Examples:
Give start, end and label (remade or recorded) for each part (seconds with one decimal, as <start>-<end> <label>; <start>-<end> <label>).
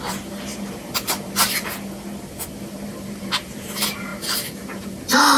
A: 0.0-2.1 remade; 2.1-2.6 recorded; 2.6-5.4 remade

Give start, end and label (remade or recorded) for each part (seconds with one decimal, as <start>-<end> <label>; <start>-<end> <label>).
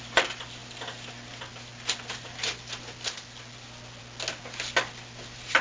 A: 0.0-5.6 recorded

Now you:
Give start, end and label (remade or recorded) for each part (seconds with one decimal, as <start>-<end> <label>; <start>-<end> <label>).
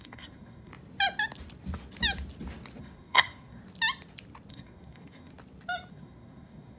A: 0.0-0.7 remade; 0.7-2.8 recorded; 2.8-3.6 remade; 3.6-4.5 recorded; 4.5-5.3 remade; 5.3-5.9 recorded; 5.9-6.8 remade